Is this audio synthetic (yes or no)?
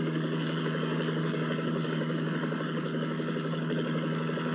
yes